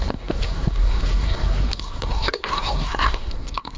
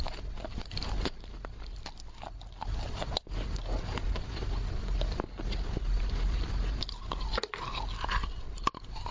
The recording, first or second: second